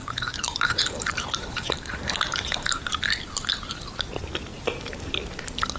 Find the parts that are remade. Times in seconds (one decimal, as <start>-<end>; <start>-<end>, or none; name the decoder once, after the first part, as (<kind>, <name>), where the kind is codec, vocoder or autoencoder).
0.0-2.8 (vocoder, BigVGAN v2); 4.5-5.1